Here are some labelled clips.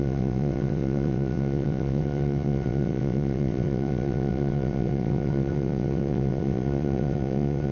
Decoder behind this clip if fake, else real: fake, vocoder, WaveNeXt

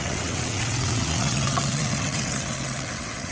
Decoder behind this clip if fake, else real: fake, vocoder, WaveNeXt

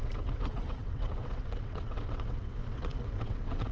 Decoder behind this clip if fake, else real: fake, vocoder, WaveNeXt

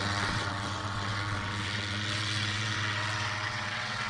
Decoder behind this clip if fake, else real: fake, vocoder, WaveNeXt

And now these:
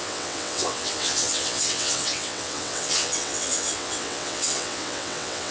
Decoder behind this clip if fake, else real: fake, vocoder, WaveNeXt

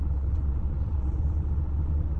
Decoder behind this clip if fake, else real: fake, vocoder, WaveNeXt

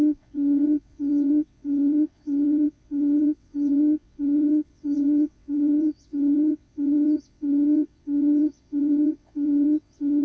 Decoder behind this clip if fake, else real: fake, vocoder, WaveNeXt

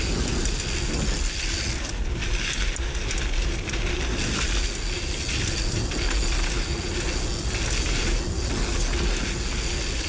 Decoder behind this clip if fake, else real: real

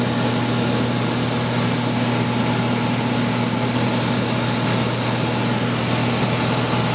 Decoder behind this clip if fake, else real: real